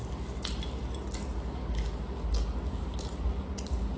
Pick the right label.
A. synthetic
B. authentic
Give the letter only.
B